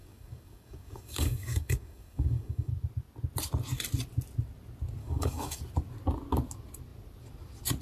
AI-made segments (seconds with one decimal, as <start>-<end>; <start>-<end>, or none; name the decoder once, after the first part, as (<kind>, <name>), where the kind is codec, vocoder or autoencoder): 0.0-2.7 (codec, DAC); 5.0-5.6